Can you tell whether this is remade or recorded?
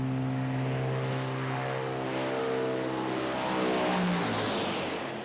recorded